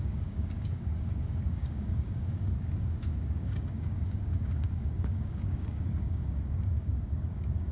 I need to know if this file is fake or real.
fake